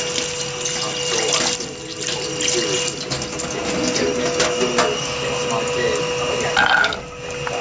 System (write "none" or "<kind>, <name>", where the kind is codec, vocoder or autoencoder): none